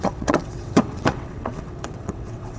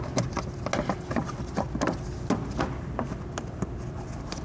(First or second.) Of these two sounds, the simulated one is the first